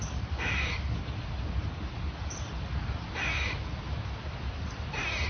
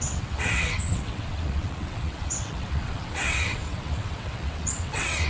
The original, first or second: first